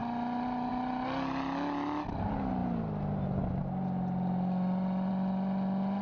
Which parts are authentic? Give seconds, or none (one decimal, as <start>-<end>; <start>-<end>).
0.0-6.0